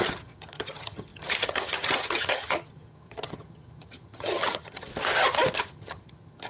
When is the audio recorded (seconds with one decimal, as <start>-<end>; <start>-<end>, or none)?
4.9-5.6